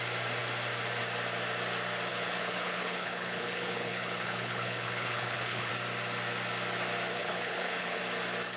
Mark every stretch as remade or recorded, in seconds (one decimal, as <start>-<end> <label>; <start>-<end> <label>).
0.0-2.1 recorded; 2.1-5.7 remade; 5.7-7.2 recorded; 7.2-8.0 remade; 8.0-8.6 recorded